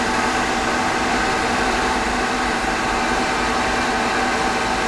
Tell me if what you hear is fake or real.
real